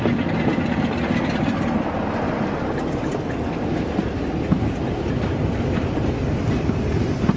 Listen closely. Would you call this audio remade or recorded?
recorded